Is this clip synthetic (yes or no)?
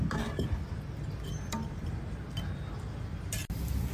no